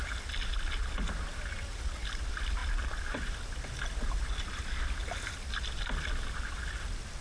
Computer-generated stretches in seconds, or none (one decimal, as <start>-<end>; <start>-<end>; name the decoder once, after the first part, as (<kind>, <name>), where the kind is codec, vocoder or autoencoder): none